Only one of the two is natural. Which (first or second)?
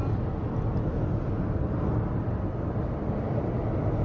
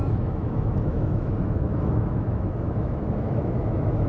first